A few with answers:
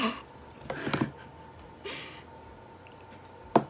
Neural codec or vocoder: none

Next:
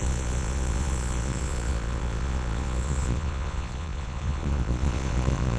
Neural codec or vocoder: vocoder, Vocos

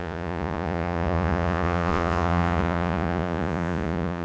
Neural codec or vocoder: vocoder, Vocos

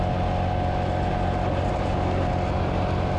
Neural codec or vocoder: none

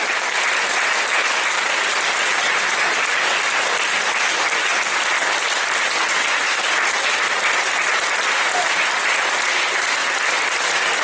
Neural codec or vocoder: none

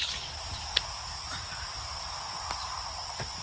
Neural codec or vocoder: none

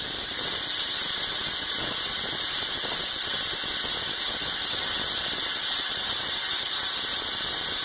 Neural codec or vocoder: none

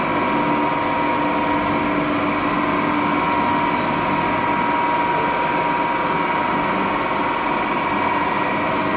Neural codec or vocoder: none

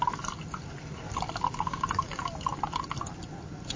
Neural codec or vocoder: none